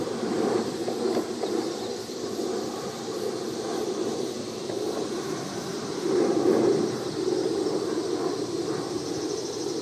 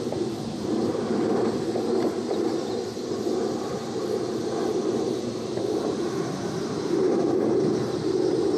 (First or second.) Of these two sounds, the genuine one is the second